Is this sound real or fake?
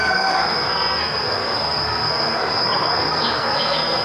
fake